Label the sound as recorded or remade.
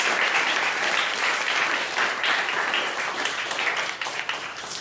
recorded